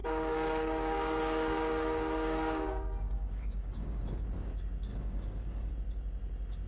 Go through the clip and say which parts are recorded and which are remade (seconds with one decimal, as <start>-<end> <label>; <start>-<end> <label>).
0.0-4.0 remade; 4.0-4.9 recorded; 4.9-5.7 remade; 5.7-6.7 recorded